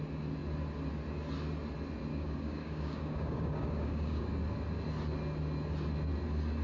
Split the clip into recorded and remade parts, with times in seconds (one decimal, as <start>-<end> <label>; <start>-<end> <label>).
0.0-2.1 recorded; 2.1-4.2 remade; 4.2-6.6 recorded